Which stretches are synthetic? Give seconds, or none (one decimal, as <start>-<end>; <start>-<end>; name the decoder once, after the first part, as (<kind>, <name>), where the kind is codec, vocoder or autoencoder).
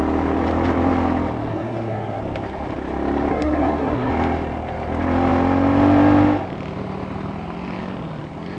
1.5-2.2 (codec, SNAC); 3.3-4.1